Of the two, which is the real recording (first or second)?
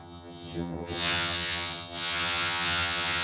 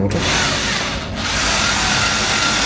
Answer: second